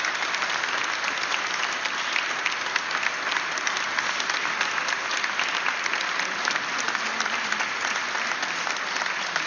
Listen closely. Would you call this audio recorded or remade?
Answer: recorded